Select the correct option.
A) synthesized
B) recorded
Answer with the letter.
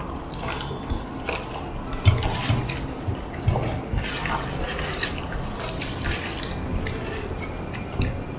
B